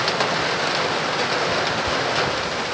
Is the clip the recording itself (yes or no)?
yes